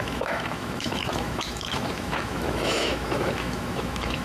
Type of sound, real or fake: fake